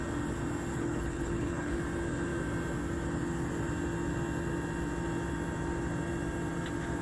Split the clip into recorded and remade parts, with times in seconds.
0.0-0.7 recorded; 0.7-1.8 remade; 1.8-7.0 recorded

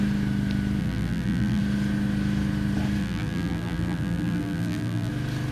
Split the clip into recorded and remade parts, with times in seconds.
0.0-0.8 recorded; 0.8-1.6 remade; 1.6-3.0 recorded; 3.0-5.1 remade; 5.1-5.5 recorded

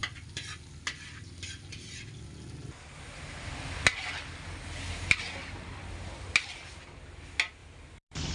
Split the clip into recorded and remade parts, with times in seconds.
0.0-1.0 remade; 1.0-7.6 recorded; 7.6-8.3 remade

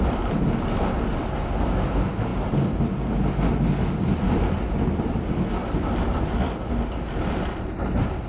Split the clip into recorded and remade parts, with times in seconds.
0.0-8.3 recorded

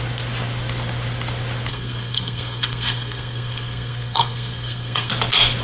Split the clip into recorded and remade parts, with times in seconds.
0.0-1.7 recorded; 1.7-5.1 remade; 5.1-5.6 recorded

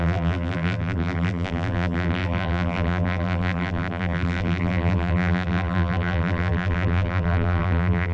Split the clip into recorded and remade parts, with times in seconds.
0.0-8.1 remade

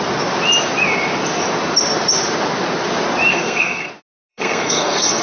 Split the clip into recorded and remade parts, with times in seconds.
0.0-3.3 recorded; 3.3-3.9 remade; 3.9-4.3 recorded; 4.3-5.2 remade

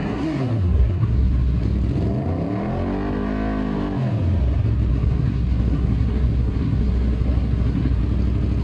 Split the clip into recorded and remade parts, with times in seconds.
0.0-1.7 remade; 1.7-4.9 recorded; 4.9-8.0 remade; 8.0-8.6 recorded